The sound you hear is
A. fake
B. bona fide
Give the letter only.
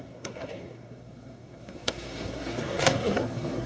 A